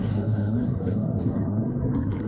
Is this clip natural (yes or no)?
no